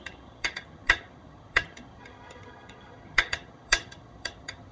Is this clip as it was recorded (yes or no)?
no